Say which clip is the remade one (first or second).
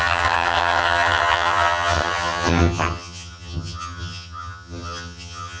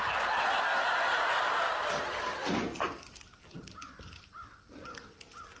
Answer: first